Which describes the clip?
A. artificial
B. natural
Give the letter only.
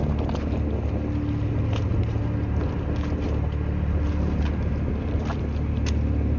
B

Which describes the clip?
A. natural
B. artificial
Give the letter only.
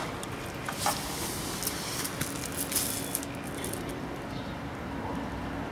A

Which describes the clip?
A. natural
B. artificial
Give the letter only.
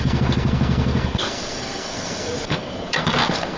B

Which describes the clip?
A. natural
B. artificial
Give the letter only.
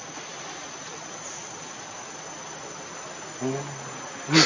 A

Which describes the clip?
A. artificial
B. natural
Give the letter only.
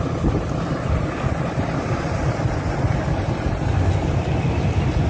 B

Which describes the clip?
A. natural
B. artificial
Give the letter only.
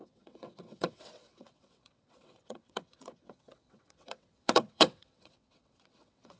B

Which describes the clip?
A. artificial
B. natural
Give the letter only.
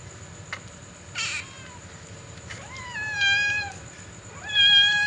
B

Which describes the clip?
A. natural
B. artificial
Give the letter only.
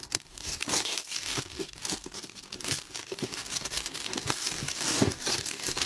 B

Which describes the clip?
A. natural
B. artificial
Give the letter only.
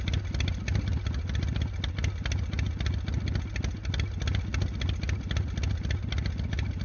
A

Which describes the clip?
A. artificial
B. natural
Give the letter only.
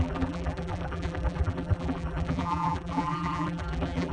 A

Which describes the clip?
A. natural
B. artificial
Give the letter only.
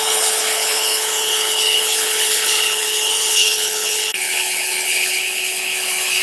B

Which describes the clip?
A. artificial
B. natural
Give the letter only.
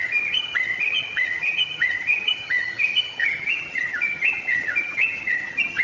A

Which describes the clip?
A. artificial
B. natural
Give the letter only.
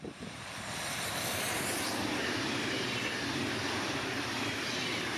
A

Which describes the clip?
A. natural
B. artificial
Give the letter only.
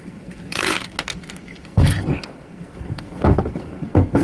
B